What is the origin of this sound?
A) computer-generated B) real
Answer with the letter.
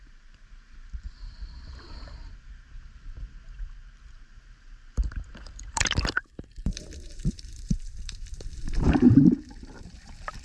A